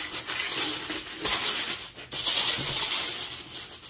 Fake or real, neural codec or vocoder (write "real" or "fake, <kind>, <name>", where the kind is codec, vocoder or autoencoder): real